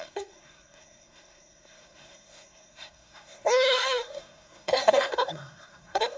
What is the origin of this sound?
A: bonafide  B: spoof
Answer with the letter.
B